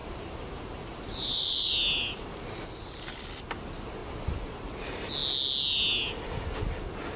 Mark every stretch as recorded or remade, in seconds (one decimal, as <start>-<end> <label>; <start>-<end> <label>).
0.0-1.7 remade; 1.7-7.2 recorded